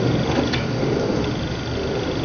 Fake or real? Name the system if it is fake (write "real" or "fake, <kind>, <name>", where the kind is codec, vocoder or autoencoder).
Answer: real